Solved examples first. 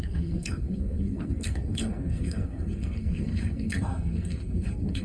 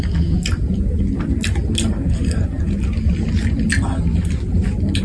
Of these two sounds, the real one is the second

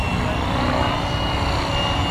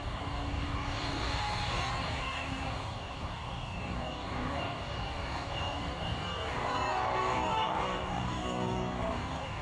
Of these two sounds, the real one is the first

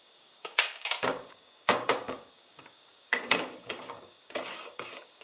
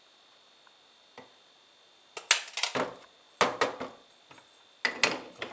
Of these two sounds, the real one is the second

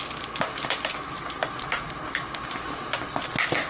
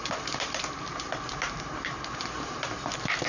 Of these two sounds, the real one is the first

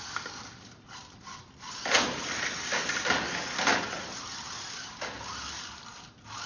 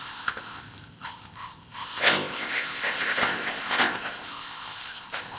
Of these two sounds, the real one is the first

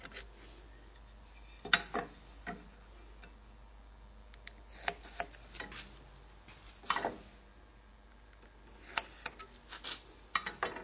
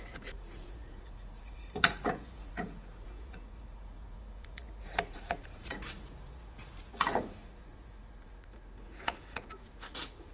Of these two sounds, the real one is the first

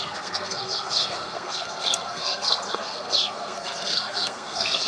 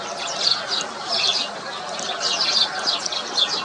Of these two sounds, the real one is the second